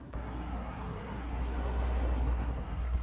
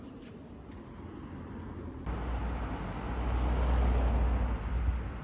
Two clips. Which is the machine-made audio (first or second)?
first